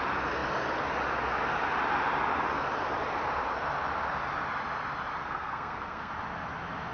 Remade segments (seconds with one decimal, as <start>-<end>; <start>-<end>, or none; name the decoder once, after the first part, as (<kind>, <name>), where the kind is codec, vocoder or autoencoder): 5.2-6.1 (codec, SNAC)